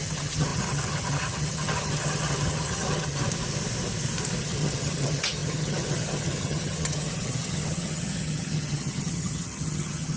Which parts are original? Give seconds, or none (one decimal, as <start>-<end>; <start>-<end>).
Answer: 3.2-4.4

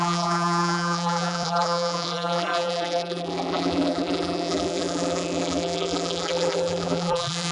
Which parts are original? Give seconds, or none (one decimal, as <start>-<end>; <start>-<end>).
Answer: none

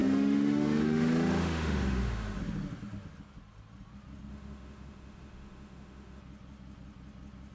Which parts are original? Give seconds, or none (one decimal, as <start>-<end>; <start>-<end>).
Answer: 2.4-4.3; 6.2-7.5

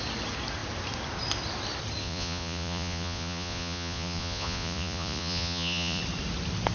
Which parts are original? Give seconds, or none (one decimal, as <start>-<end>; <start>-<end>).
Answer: 0.0-2.0; 6.0-6.7